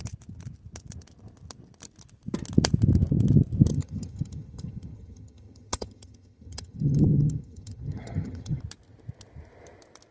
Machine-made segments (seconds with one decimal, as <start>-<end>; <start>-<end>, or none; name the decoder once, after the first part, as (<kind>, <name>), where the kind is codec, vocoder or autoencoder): 3.7-8.6 (vocoder, HiFi-GAN)